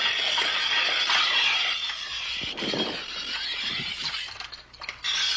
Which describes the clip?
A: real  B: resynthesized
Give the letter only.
A